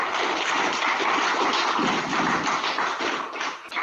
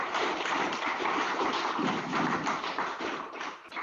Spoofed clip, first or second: second